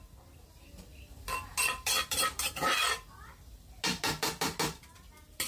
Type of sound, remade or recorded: recorded